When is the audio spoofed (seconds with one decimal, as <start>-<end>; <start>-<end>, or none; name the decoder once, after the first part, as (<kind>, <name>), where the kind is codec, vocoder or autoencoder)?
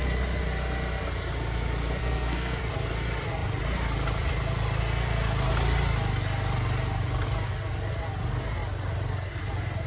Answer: 2.0-2.6 (codec, SNAC)